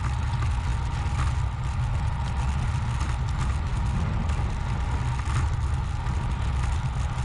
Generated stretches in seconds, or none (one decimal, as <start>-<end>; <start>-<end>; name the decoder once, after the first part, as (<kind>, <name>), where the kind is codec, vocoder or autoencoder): none